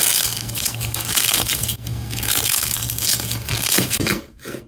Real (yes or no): no